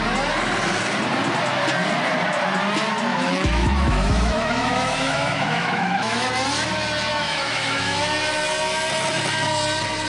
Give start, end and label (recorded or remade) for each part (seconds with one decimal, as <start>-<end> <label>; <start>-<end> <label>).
0.0-3.1 recorded; 3.1-6.3 remade; 6.3-7.1 recorded; 7.1-8.0 remade; 8.0-10.1 recorded